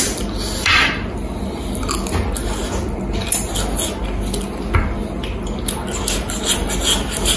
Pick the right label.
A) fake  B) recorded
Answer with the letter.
B